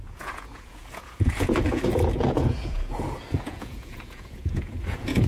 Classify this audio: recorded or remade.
remade